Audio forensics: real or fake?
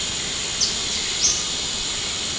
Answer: real